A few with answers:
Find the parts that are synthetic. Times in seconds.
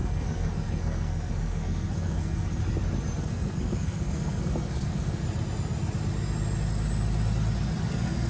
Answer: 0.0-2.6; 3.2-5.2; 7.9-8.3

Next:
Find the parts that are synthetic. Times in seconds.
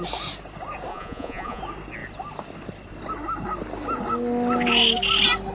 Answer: 0.9-1.6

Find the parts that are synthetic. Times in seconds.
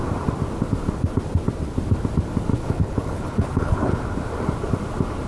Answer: 2.5-4.0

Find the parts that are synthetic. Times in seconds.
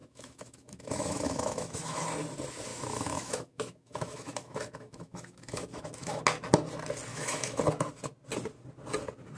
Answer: 0.0-2.0; 2.7-6.2; 7.1-7.6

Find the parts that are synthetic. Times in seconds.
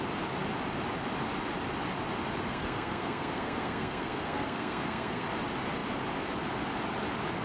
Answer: 2.5-5.3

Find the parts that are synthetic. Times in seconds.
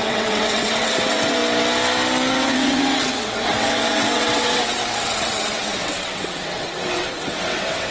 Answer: 0.0-1.4; 2.3-7.9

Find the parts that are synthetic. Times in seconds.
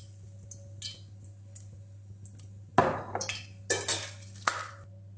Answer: none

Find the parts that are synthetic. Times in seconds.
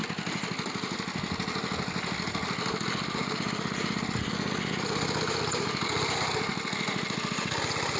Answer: none